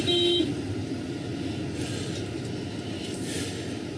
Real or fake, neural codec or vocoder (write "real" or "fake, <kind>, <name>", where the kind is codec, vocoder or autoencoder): real